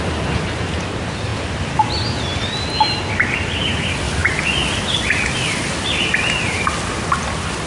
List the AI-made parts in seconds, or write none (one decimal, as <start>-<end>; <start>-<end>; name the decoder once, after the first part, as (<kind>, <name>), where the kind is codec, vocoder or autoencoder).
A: none